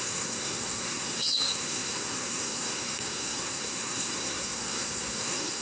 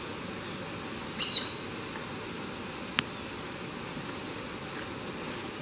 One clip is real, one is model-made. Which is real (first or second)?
second